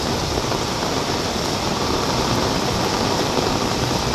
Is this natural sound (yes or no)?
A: yes